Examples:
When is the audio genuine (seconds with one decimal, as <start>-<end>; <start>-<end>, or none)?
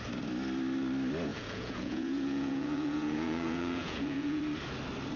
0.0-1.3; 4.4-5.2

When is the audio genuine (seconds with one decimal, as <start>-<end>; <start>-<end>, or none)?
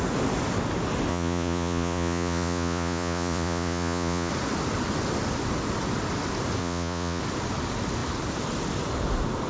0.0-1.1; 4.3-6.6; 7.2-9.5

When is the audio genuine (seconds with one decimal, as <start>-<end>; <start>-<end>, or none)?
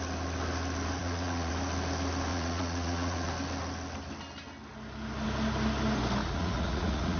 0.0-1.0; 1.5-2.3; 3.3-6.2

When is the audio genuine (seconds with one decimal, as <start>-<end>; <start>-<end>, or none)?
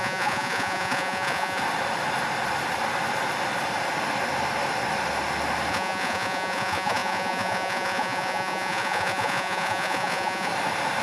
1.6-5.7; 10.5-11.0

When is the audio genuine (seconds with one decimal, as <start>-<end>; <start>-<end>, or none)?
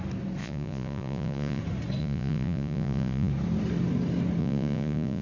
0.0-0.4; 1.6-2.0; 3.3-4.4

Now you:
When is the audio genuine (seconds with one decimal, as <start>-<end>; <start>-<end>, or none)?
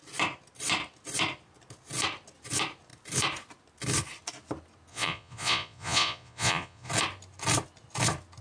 0.0-4.9; 6.9-8.4